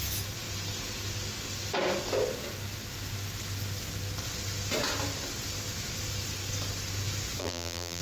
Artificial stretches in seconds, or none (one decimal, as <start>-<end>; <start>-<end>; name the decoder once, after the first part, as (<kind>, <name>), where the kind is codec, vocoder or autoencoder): 7.4-8.0 (vocoder, BigVGAN v2)